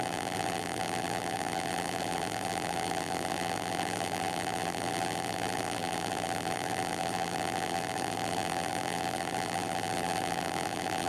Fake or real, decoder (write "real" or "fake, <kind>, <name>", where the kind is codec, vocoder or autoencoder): fake, vocoder, BigVGAN v2